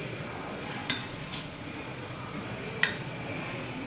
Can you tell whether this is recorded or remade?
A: remade